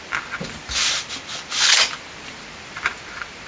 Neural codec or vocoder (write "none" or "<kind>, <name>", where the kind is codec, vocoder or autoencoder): none